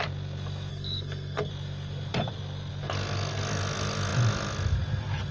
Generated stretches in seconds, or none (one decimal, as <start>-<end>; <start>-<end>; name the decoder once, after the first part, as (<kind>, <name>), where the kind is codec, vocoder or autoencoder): 0.7-1.5 (codec, SNAC)